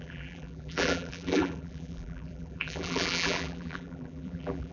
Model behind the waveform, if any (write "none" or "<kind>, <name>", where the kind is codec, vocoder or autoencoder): vocoder, BigVGAN v2